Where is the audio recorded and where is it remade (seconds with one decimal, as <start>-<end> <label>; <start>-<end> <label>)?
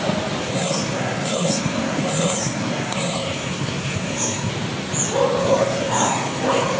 0.0-0.4 recorded; 0.4-4.5 remade; 4.5-5.4 recorded; 5.4-6.8 remade